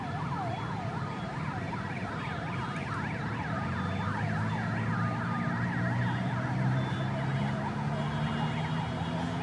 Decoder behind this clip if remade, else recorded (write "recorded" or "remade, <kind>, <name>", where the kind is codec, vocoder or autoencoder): recorded